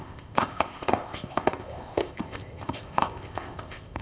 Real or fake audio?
fake